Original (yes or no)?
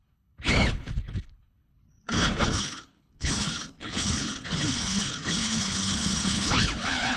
no